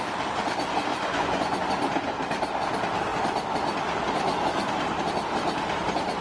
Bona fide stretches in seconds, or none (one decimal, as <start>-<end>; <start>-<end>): 0.0-0.9; 1.6-6.2